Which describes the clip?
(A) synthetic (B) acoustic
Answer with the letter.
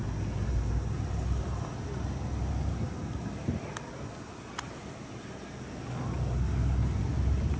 B